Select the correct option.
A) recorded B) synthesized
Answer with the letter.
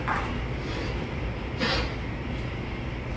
A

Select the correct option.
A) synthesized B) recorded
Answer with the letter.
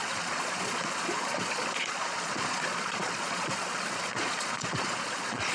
A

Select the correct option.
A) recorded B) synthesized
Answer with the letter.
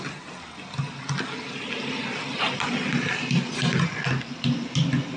A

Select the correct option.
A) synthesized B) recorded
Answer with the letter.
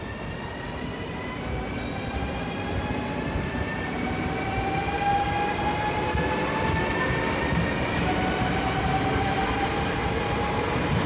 B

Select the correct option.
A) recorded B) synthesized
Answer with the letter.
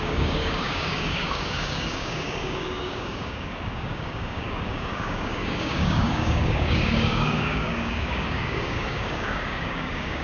B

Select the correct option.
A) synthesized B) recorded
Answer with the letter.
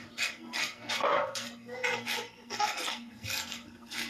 A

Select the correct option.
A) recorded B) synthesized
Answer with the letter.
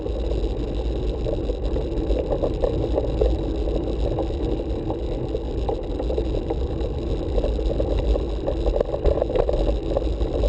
A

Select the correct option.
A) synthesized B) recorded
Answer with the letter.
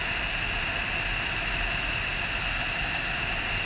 B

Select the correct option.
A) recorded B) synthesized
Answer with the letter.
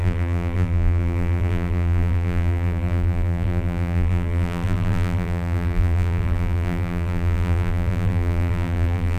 B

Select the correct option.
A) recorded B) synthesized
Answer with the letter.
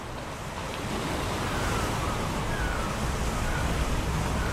A